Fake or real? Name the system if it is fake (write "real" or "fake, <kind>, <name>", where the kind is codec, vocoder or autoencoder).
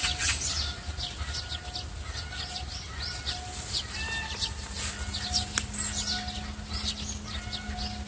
real